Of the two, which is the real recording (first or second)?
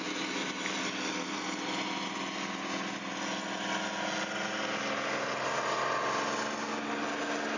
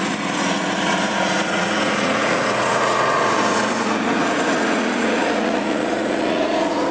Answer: first